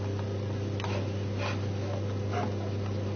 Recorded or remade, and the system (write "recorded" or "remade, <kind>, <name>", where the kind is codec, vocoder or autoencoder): recorded